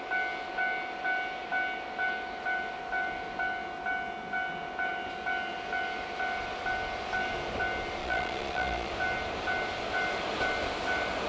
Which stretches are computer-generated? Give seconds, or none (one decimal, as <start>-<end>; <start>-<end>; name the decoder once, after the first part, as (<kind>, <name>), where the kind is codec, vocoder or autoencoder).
8.0-8.9 (vocoder, Vocos)